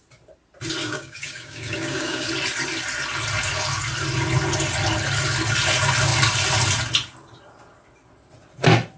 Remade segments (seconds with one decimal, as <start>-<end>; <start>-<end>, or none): 0.8-2.3